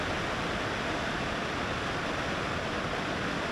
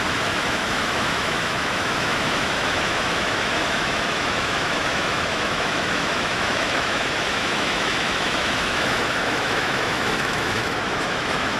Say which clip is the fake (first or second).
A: second